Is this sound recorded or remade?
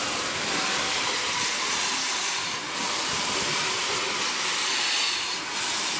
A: recorded